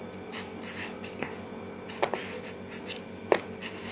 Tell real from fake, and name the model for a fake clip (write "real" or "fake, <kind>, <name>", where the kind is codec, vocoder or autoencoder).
real